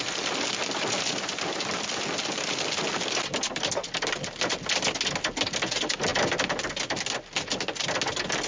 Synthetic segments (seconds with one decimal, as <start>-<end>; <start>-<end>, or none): none